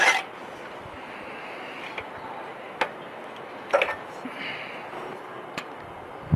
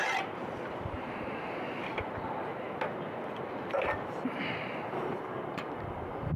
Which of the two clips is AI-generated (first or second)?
second